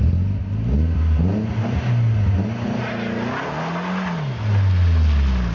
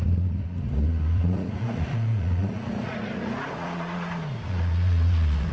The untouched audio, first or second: first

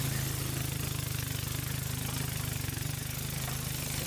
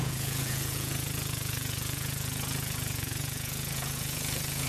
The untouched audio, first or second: first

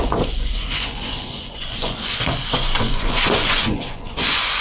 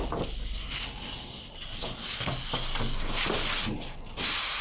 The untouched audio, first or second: second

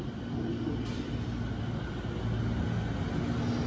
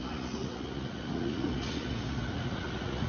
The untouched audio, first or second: first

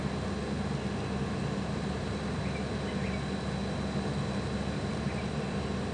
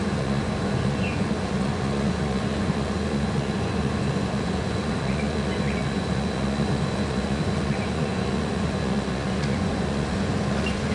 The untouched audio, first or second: first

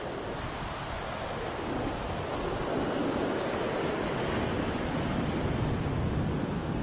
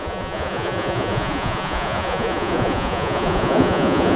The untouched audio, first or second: first